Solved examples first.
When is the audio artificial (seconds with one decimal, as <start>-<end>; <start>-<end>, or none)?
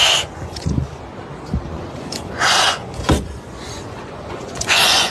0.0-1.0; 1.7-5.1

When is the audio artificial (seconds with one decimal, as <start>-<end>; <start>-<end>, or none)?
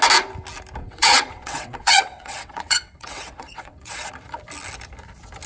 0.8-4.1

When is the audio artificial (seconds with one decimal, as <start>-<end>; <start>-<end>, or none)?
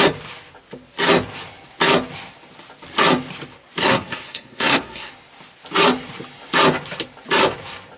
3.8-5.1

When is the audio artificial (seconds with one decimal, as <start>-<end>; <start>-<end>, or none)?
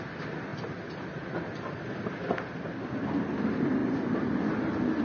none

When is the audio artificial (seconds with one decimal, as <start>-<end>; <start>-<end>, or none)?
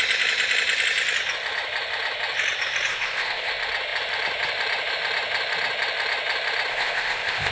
2.9-3.5; 6.7-7.5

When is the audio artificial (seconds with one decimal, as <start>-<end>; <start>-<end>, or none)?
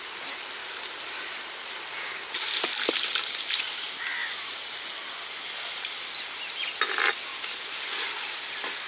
0.6-2.5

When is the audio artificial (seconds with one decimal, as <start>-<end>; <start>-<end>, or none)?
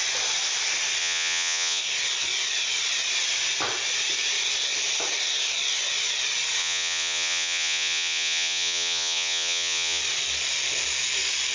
1.0-1.8; 6.6-10.0